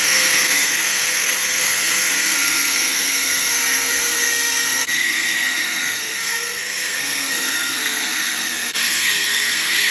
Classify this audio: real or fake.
fake